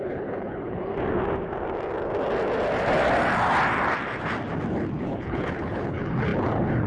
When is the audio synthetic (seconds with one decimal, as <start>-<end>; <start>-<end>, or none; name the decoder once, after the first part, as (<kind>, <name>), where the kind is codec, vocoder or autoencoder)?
0.0-0.9 (codec, HILCodec); 5.0-6.9